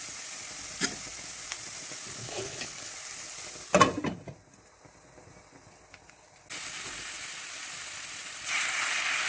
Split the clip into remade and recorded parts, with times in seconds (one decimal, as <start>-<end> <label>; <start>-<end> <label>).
0.0-2.2 recorded; 2.2-2.9 remade; 2.9-9.3 recorded